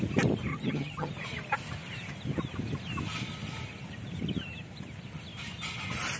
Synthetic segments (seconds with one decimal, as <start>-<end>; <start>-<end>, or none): 0.5-1.1

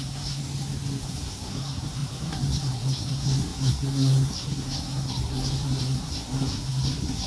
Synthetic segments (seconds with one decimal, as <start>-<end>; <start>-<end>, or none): 0.0-0.4; 1.0-7.3